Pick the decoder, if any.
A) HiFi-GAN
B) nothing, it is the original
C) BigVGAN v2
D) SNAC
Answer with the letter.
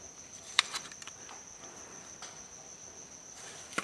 C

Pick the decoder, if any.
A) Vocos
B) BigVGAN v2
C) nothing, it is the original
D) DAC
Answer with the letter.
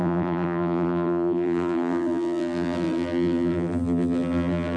B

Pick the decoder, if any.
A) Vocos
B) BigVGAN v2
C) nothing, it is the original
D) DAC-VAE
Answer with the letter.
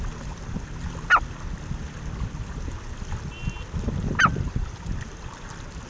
C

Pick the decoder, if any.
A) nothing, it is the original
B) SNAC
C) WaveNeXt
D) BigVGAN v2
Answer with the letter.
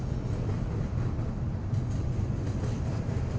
A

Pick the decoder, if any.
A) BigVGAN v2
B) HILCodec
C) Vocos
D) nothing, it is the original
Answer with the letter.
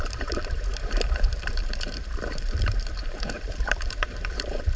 A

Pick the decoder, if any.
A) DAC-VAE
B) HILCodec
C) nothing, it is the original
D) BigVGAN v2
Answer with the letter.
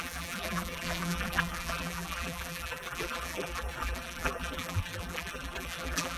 D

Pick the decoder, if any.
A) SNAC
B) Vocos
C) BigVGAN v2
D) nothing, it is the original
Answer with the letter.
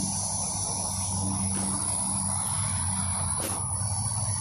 D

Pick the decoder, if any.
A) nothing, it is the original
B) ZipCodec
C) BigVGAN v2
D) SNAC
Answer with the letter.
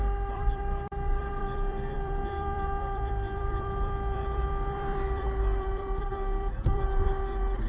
C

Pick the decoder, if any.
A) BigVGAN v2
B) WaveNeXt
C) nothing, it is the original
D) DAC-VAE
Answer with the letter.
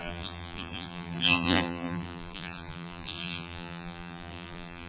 A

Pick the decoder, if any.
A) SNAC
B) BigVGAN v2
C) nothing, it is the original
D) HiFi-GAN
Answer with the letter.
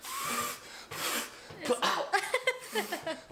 C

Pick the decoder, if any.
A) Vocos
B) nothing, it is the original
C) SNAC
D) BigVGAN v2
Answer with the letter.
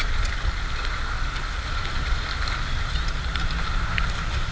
B